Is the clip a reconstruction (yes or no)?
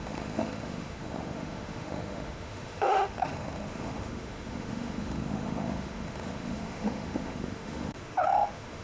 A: yes